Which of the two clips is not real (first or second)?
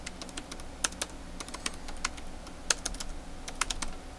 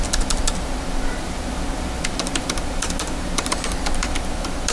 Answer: second